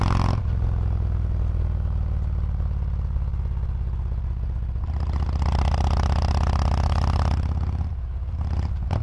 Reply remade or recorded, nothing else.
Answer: recorded